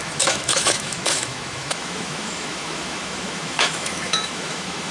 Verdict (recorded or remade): remade